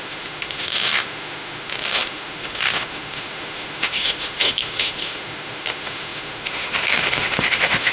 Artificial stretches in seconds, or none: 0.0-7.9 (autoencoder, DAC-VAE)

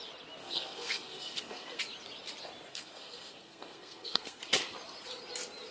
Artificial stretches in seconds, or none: 0.4-1.8 (codec, SNAC); 2.7-4.4

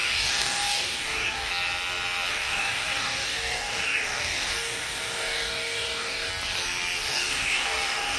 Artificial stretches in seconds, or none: 0.0-1.5 (codec, DAC); 2.3-6.3; 7.0-8.2

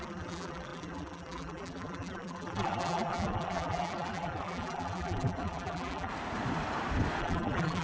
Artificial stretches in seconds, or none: 0.0-6.1 (vocoder, BigVGAN v2); 7.2-7.8